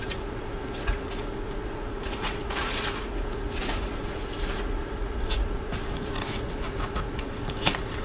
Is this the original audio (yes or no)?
no